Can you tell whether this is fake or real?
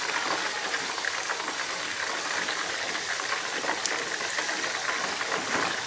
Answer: real